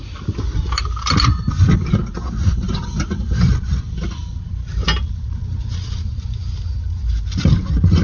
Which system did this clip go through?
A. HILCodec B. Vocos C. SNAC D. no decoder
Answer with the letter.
D